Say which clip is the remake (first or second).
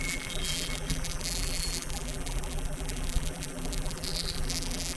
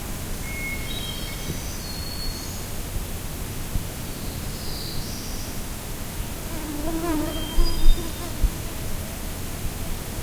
first